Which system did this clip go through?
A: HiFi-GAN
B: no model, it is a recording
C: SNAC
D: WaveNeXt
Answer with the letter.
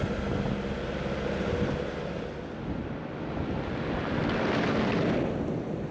B